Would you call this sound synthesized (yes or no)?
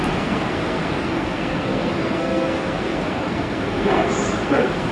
yes